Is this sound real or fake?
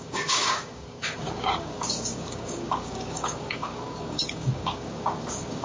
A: fake